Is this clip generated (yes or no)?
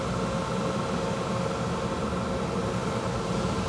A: no